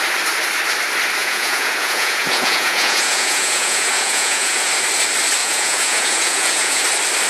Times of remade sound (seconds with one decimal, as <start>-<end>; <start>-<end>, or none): 1.2-4.7; 5.4-6.8